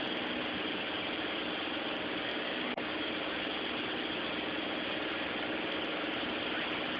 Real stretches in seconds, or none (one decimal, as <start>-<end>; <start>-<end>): 0.0-2.3; 3.1-7.0